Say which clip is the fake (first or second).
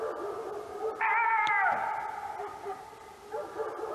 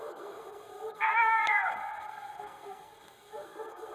second